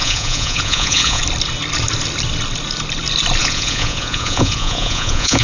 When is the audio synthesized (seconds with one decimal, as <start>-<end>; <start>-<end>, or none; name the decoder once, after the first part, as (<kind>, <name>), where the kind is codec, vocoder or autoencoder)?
0.0-1.2 (vocoder, Vocos); 3.4-5.4